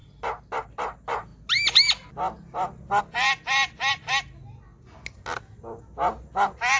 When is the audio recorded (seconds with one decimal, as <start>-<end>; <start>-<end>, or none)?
0.0-6.8